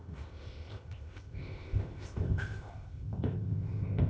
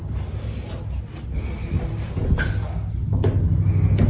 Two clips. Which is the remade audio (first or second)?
first